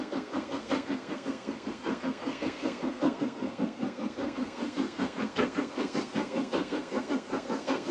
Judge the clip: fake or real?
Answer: fake